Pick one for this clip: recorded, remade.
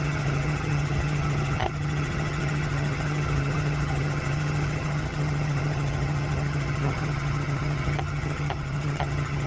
remade